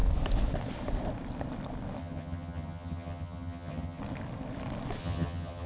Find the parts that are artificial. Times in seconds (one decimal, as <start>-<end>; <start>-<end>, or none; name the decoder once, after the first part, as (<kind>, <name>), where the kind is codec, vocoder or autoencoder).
2.0-4.0 (vocoder, HiFi-GAN); 5.0-5.7